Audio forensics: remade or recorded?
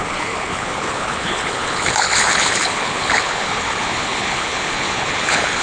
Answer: remade